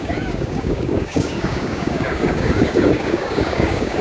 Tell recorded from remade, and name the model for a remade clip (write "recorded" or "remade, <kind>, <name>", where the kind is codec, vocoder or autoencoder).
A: remade, codec, DAC